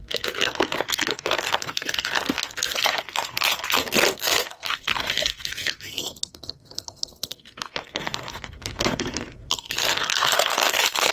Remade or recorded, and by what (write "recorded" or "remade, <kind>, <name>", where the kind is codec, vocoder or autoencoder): remade, codec, SNAC